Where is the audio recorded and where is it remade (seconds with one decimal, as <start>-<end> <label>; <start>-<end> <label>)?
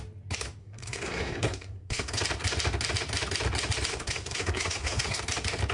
0.0-0.6 recorded; 0.6-2.2 remade; 2.2-3.9 recorded; 3.9-5.2 remade; 5.2-5.7 recorded